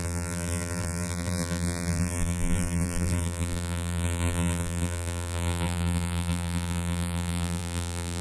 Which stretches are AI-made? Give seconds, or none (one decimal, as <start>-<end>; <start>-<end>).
0.0-8.2